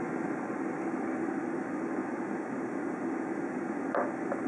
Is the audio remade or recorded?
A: recorded